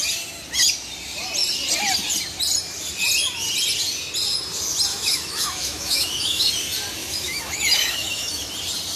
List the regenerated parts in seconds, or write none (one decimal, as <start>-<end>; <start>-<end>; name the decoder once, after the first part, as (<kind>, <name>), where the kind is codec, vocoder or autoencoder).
4.9-6.5 (autoencoder, DAC-VAE); 7.0-8.5